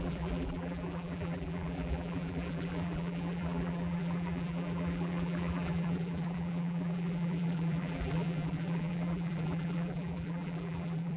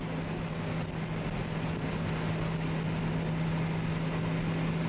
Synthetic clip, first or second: first